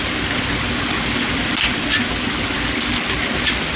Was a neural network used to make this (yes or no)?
no